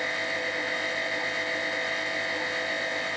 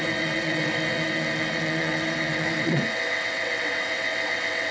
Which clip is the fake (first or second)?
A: second